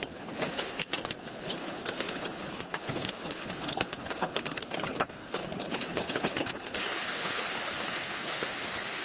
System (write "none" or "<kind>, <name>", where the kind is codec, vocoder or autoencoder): codec, HILCodec